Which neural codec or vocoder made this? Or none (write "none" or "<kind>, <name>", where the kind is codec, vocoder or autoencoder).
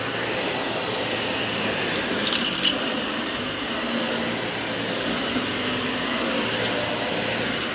none